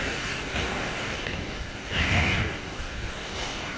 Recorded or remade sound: remade